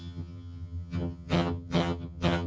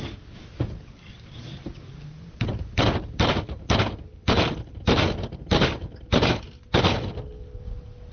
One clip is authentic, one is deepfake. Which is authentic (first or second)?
second